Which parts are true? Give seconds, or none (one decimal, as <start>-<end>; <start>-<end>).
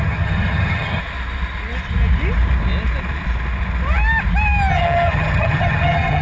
1.0-4.7